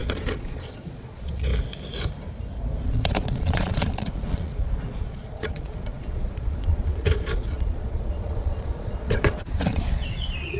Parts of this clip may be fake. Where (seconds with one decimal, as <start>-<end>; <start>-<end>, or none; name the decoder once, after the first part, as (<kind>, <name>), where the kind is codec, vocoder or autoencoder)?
0.0-1.5 (vocoder, Vocos); 2.8-10.6